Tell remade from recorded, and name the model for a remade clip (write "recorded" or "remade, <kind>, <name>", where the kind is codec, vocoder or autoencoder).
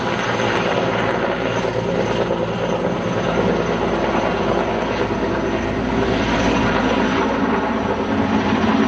recorded